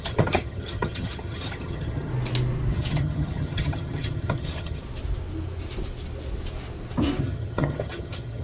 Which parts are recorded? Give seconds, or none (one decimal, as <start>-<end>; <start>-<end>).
2.1-2.7; 4.8-7.2